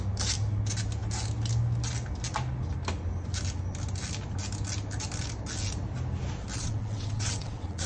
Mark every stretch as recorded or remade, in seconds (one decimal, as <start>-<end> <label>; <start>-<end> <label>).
0.0-6.6 recorded; 6.6-7.9 remade